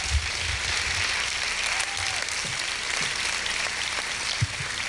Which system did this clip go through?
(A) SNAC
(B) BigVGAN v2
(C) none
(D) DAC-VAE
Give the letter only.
C